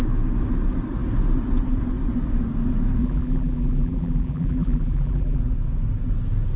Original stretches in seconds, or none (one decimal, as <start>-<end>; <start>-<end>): 0.0-3.0; 5.4-6.6